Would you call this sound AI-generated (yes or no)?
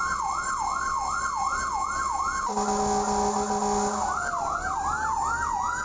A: no